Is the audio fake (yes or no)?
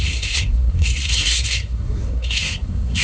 yes